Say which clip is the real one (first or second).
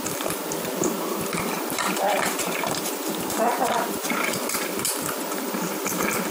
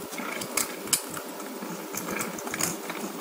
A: second